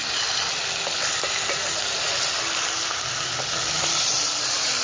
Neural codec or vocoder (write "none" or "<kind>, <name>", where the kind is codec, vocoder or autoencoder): none